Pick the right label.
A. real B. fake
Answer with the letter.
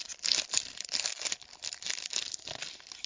A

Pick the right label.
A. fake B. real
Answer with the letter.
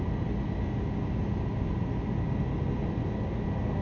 B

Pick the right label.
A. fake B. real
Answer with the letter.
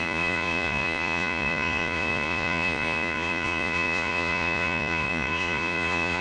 A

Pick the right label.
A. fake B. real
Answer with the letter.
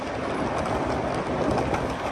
B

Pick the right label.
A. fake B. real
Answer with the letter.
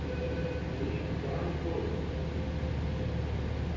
B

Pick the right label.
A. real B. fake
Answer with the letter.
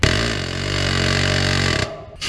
A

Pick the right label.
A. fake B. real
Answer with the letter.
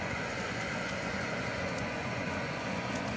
A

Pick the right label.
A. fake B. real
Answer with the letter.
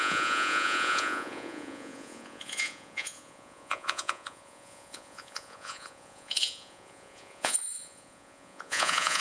A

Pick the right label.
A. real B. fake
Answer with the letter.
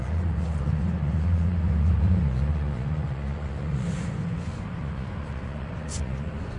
B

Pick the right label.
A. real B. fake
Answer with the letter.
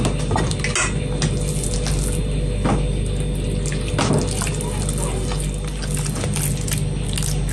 A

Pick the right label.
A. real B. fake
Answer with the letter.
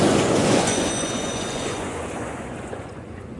B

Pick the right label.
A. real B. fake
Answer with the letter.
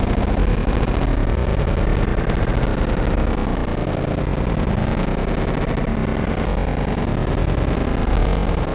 A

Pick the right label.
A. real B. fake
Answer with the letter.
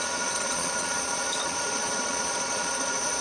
B